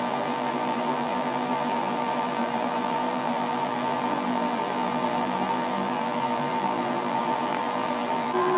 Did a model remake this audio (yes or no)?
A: yes